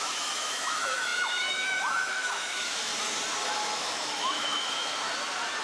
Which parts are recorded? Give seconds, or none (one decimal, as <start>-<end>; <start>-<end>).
2.9-3.8; 4.9-5.6